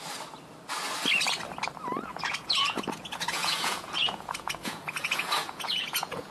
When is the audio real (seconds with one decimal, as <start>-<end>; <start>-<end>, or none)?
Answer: 0.0-2.1